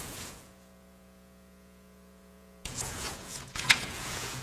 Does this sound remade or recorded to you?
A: remade